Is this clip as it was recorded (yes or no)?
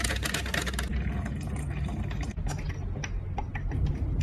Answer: yes